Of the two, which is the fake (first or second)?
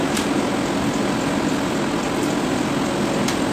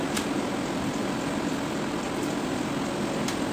second